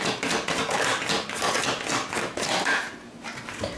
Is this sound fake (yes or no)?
no